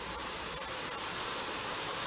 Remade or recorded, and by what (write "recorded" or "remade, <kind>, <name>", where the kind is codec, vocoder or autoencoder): recorded